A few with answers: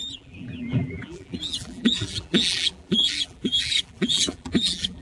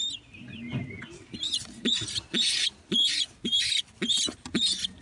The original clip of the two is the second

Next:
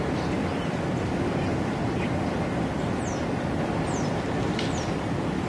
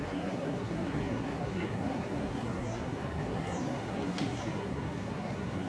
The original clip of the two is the first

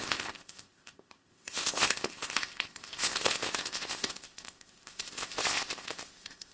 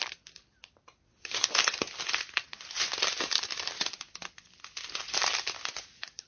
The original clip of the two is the second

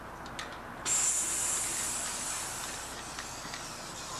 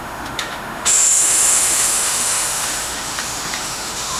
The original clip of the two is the first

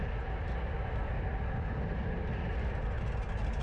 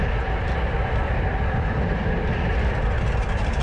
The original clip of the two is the first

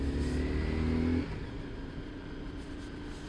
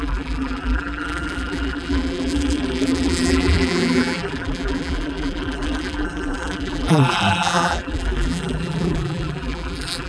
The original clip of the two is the first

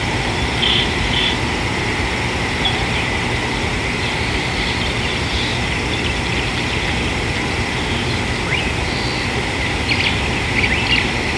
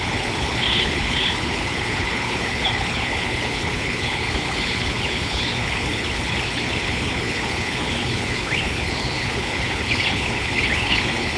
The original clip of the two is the first